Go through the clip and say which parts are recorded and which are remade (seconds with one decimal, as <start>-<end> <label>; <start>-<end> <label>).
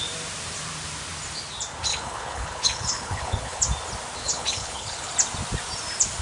0.0-1.9 recorded; 1.9-3.6 remade; 3.6-4.2 recorded; 4.2-5.1 remade; 5.1-6.2 recorded